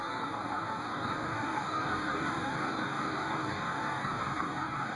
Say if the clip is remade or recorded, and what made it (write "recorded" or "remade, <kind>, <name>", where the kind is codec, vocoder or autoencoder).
remade, codec, DAC